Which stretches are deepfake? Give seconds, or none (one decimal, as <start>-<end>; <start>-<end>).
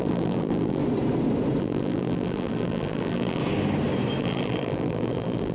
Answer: 0.0-0.8; 1.6-3.4; 4.2-5.5